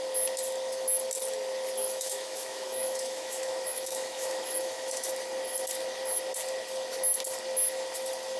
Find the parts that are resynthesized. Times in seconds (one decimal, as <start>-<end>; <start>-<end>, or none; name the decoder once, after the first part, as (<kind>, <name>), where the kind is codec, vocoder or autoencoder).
1.8-5.1 (autoencoder, DAC-VAE)